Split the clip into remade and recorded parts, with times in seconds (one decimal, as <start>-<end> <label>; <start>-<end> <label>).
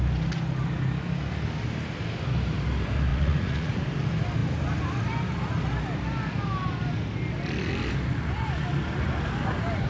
0.0-3.1 recorded; 3.1-3.8 remade; 3.8-9.9 recorded